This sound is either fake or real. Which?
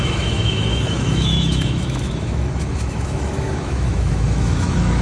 fake